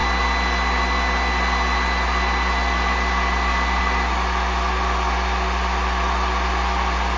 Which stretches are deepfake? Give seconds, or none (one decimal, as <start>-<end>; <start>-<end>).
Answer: none